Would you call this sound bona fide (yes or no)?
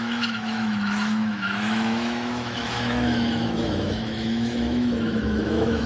no